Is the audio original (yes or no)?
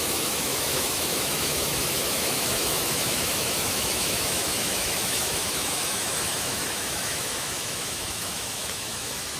no